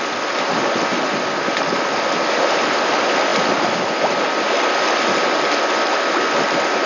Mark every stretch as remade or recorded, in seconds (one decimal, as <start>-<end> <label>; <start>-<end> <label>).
0.0-6.9 recorded